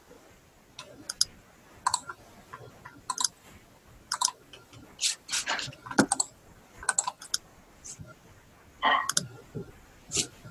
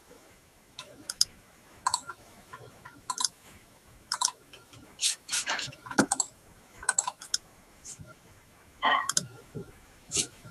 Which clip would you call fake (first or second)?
second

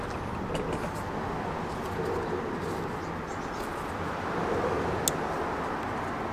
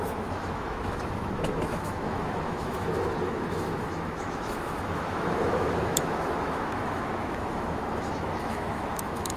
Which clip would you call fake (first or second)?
second